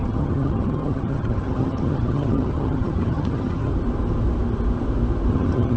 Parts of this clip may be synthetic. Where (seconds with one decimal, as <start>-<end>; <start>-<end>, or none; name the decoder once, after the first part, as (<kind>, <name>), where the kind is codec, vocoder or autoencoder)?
0.0-3.7 (vocoder, HiFi-GAN); 5.3-5.8